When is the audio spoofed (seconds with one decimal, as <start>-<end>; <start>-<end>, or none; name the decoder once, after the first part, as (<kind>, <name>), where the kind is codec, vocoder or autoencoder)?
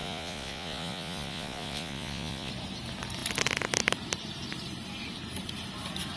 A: 0.0-2.5 (vocoder, Vocos)